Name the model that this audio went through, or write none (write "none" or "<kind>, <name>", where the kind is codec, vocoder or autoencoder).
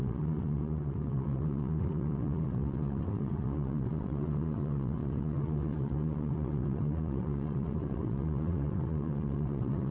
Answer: vocoder, WaveNeXt